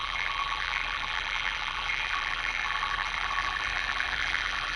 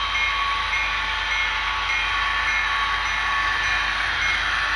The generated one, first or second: first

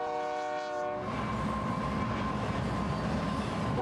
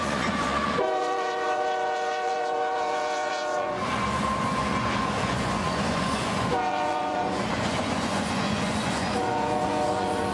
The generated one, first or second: second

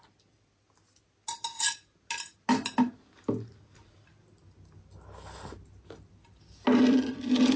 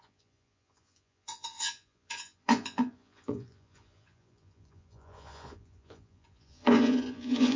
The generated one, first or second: second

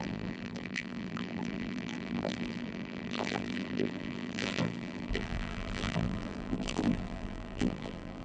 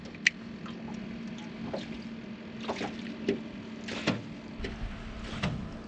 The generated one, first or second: first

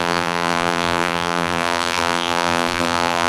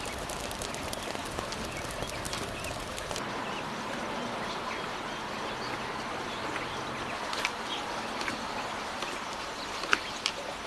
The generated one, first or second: first